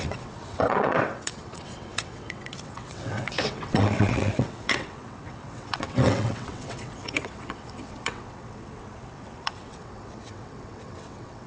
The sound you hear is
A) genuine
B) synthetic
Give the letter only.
B